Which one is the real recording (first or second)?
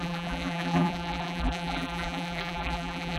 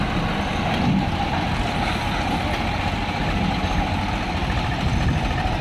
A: second